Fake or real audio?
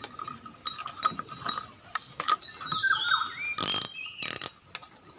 real